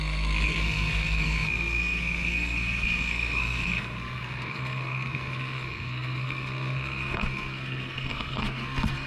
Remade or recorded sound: remade